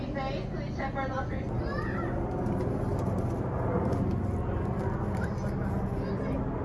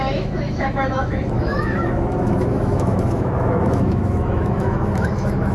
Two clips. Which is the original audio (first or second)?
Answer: first